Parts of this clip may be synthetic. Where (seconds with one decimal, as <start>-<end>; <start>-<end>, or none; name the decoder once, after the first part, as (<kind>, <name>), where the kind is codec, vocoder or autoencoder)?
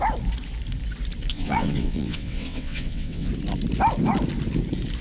1.3-3.3 (vocoder, WaveNeXt)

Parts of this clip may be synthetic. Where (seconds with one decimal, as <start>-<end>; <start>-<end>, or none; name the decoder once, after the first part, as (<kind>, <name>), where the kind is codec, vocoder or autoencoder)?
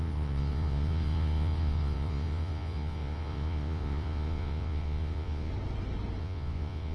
0.0-5.5 (vocoder, Vocos); 6.2-6.9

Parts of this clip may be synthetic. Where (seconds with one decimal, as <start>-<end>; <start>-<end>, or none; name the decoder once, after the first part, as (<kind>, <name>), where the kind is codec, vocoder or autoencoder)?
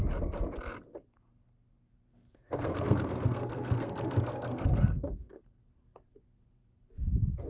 1.1-5.6 (codec, SNAC)